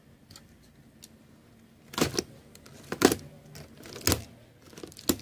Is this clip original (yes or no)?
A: yes